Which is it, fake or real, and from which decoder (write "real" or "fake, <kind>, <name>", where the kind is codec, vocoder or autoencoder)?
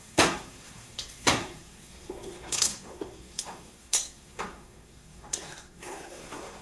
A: fake, codec, SNAC